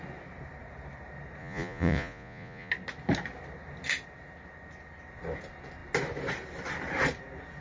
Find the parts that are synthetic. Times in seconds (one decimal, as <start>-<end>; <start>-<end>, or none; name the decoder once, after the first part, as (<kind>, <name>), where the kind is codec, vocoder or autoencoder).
1.4-2.7 (vocoder, Vocos)